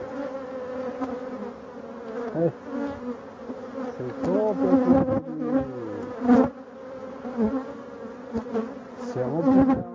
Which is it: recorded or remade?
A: recorded